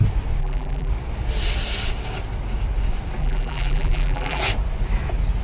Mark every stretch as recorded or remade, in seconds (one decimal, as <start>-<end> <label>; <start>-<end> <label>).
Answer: 0.0-0.4 recorded; 0.4-0.9 remade; 0.9-3.2 recorded; 3.2-4.4 remade; 4.4-5.4 recorded